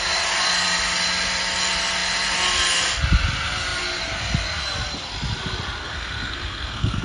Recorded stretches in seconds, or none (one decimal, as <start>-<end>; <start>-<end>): 0.0-5.8